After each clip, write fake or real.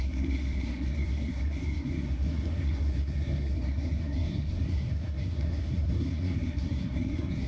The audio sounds fake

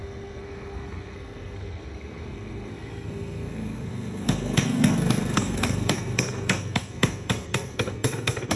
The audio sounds fake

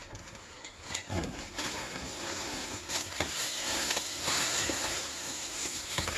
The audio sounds fake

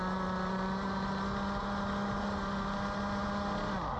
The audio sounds real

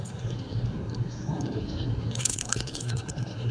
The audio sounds fake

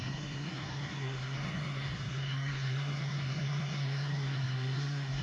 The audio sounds fake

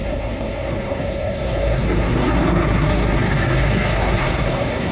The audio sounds fake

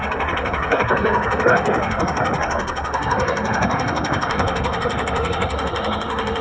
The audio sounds fake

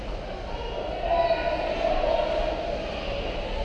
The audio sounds real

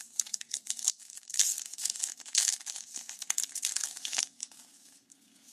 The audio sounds fake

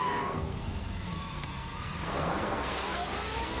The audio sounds fake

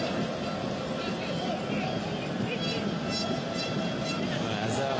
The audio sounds real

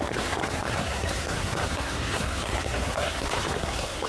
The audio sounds fake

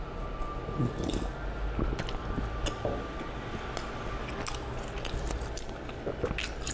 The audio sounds real